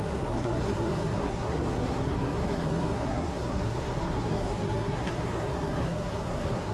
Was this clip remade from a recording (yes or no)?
yes